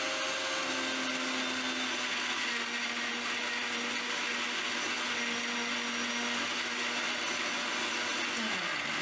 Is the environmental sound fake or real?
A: real